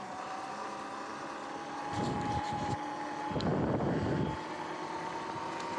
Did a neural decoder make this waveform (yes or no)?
no